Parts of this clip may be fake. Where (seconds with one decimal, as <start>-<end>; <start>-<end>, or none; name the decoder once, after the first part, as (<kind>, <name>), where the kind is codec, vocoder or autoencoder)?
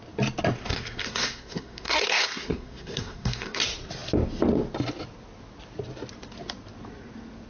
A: 0.6-3.6 (codec, SNAC)